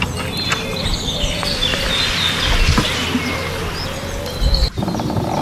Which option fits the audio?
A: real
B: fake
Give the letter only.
A